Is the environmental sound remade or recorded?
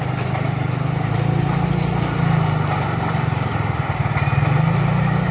recorded